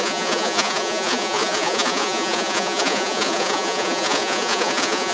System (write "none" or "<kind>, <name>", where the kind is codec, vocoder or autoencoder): vocoder, Vocos